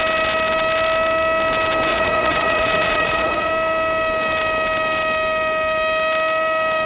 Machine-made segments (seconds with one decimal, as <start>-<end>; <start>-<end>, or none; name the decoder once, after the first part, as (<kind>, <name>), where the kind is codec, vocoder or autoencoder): 1.9-3.5 (vocoder, Vocos)